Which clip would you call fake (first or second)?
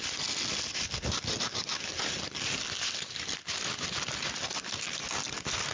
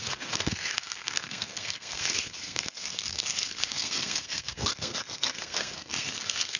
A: second